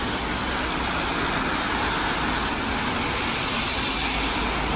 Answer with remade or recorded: recorded